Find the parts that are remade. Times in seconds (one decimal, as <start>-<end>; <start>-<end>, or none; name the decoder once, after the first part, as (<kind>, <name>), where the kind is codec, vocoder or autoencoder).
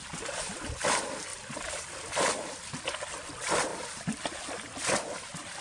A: 0.0-0.6 (vocoder, BigVGAN v2); 1.3-2.1; 3.7-5.6